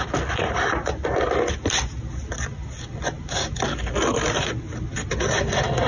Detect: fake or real real